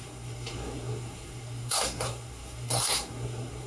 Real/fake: fake